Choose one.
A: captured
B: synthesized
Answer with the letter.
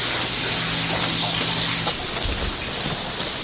A